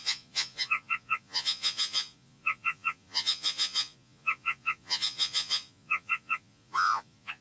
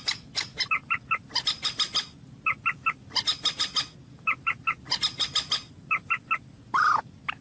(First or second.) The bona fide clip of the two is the second